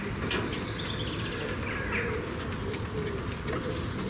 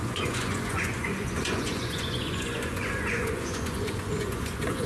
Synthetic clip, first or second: second